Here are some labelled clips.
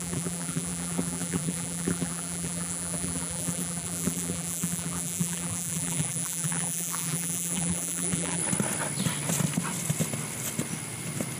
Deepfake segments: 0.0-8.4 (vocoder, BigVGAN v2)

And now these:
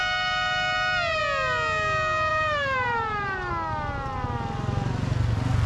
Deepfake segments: 2.3-3.5 (vocoder, BigVGAN v2)